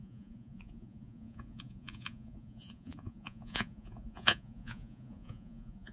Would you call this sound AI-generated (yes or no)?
yes